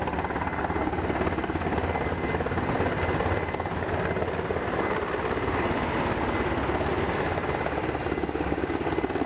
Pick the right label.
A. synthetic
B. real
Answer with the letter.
B